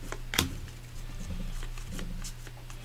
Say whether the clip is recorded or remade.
recorded